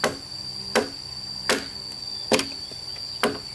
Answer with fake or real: real